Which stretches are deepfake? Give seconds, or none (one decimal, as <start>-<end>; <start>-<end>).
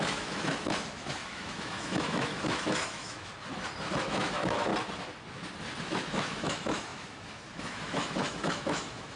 0.0-3.3; 3.9-4.7; 5.8-9.2